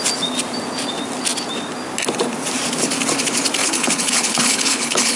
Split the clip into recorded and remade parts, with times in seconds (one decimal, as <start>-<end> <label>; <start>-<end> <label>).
0.0-3.6 recorded; 3.6-5.2 remade